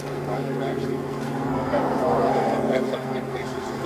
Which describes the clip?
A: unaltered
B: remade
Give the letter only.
B